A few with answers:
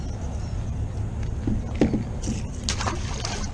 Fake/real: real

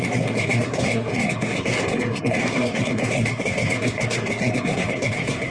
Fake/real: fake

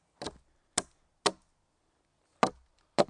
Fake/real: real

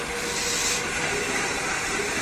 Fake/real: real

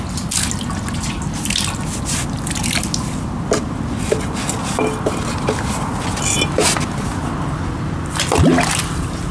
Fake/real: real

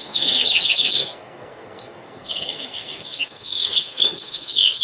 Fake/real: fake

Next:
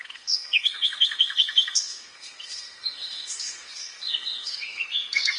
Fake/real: fake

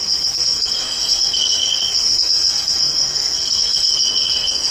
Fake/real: fake